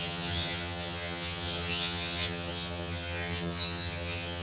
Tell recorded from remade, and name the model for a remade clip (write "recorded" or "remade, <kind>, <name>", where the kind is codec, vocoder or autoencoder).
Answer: remade, vocoder, HiFi-GAN